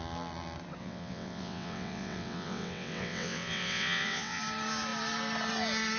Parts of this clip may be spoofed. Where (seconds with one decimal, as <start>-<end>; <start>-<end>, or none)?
0.8-4.4